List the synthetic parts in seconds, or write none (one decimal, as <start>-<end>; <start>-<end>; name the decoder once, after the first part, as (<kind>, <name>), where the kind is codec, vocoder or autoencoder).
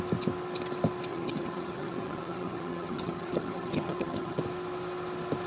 1.1-4.4 (vocoder, HiFi-GAN)